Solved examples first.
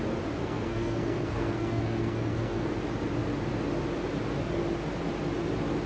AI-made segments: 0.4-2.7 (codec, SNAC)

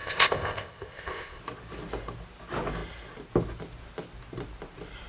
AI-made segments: 0.0-1.4 (codec, ZipCodec)

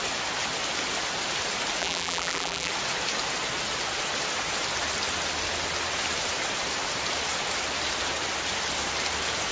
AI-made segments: 1.8-2.7 (vocoder, BigVGAN v2)

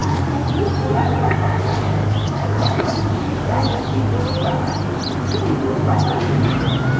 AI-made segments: 0.0-0.5 (codec, DAC); 1.6-4.0